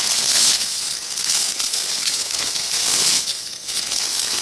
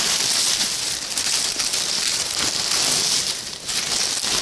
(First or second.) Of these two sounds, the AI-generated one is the first